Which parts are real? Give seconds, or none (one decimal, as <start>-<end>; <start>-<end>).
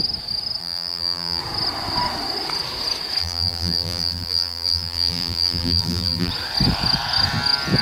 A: 0.0-0.6; 1.4-3.2; 6.3-7.8